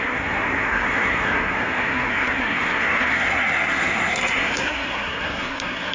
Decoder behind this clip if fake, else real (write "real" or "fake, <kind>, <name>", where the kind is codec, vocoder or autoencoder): fake, codec, SNAC